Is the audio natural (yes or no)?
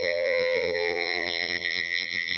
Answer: no